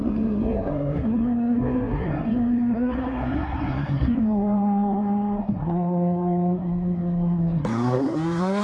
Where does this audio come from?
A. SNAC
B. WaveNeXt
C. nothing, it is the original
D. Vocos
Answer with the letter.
A